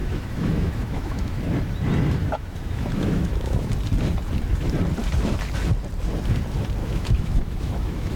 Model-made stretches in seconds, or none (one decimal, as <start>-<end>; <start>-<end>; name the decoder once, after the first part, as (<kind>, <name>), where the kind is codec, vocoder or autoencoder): 0.0-1.4 (autoencoder, DAC-VAE); 2.2-3.7; 6.8-8.2